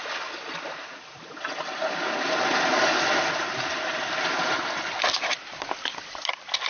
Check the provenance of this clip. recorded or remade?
recorded